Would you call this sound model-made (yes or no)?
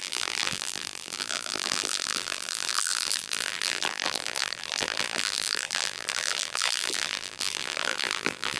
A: yes